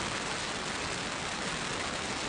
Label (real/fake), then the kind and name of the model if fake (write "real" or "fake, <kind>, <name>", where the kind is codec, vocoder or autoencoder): real